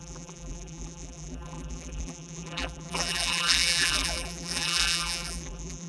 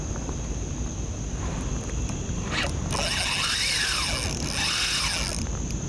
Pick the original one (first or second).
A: second